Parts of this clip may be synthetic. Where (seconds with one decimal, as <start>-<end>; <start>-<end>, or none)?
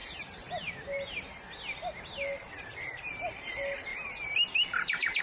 3.9-5.2